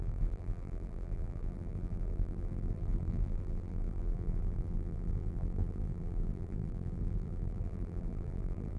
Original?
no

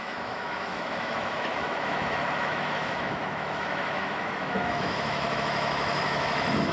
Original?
no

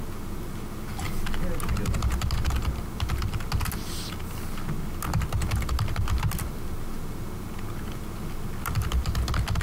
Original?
yes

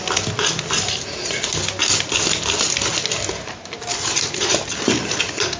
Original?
yes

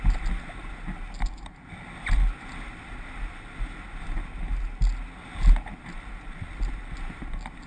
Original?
yes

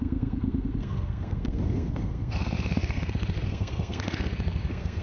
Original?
no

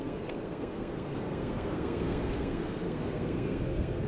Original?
no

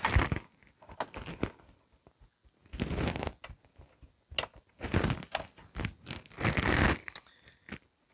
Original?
yes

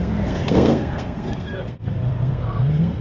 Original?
no